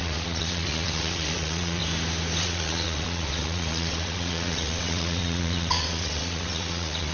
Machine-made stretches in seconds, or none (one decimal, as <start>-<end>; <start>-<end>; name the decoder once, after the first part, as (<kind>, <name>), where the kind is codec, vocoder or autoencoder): 0.0-1.8 (vocoder, WaveNeXt); 2.4-7.1